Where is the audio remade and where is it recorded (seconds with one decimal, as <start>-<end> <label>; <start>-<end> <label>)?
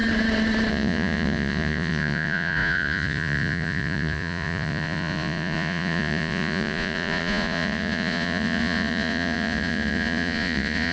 0.0-0.7 recorded; 0.7-10.9 remade